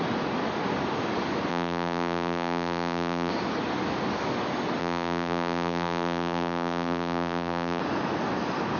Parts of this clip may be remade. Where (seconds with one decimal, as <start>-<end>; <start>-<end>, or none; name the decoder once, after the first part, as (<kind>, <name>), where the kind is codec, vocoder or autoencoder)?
1.5-3.3 (vocoder, BigVGAN v2); 4.8-7.8